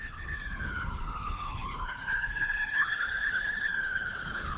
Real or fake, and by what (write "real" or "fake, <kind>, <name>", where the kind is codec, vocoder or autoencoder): fake, codec, HILCodec